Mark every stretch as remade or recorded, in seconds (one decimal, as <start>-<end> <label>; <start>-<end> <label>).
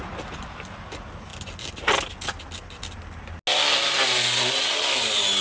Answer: 0.0-5.4 recorded